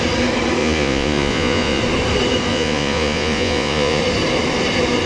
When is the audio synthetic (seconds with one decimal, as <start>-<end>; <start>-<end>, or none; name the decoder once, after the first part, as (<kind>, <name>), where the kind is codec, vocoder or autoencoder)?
0.6-1.8 (vocoder, Vocos); 2.5-4.0